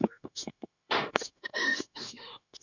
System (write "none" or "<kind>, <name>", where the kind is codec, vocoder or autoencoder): autoencoder, DAC-VAE